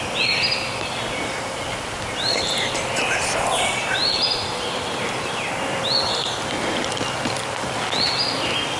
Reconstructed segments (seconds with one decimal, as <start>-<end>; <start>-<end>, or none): none